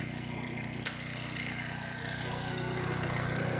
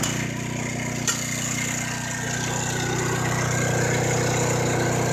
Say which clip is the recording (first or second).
second